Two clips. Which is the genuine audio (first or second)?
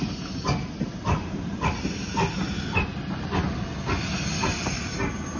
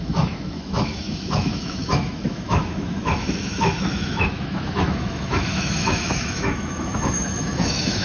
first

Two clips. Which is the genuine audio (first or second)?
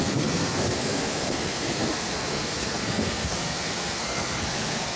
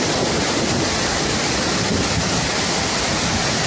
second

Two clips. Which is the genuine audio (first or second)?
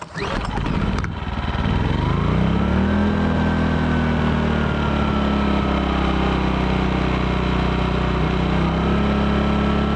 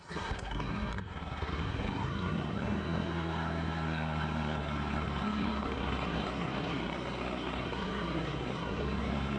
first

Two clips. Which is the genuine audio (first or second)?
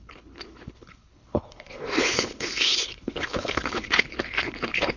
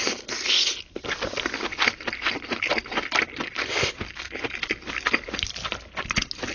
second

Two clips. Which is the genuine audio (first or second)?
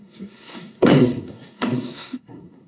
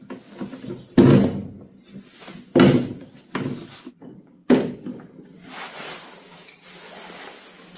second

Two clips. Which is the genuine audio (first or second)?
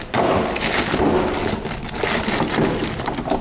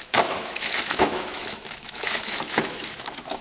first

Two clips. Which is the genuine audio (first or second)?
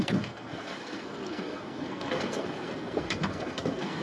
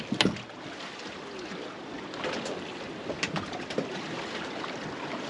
second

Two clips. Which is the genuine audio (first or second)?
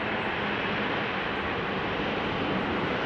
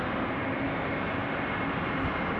second